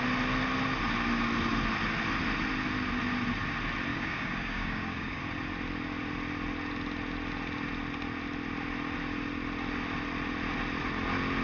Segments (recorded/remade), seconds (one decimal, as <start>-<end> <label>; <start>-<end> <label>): 0.0-3.9 recorded; 3.9-5.2 remade; 5.2-11.4 recorded